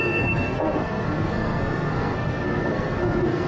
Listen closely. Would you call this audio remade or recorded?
remade